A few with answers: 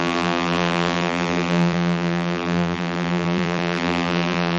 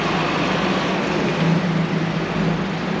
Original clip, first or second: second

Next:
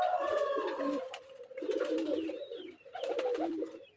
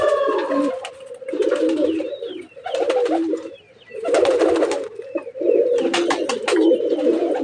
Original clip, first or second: second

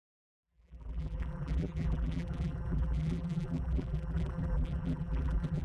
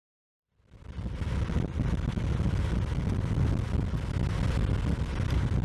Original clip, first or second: second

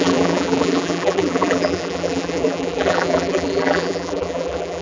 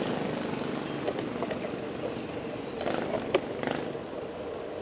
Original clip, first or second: second